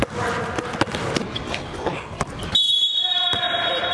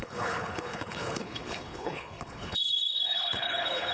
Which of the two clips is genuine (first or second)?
first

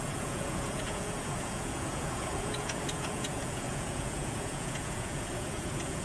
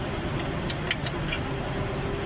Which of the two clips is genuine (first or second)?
second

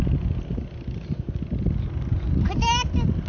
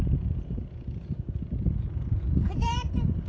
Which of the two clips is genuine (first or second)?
first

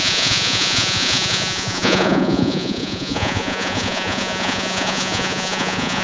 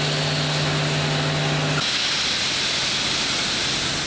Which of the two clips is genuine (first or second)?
second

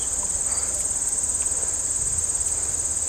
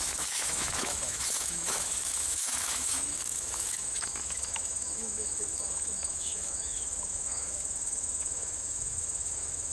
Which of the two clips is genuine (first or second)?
first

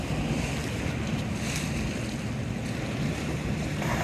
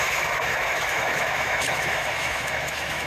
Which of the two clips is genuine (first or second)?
first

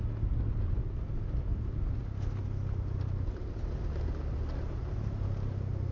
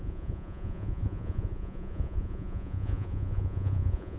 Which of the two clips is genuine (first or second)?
first